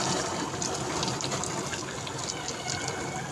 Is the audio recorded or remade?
recorded